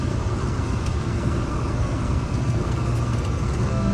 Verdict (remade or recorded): remade